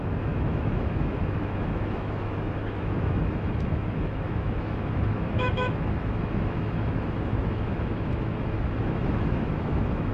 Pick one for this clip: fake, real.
fake